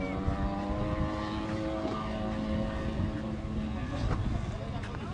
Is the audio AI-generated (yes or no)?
no